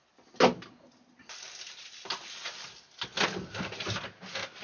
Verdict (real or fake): real